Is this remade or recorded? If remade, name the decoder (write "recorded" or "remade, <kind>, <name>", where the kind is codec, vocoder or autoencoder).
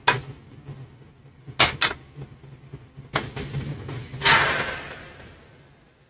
recorded